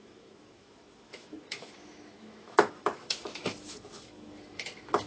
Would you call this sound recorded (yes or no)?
no